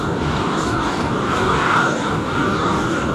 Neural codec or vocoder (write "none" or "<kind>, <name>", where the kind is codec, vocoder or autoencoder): codec, DAC